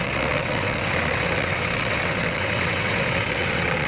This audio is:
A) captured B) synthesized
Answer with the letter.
B